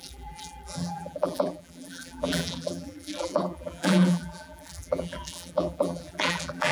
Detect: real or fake fake